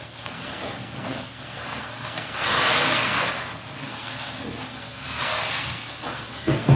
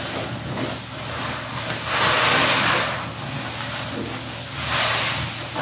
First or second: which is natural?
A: second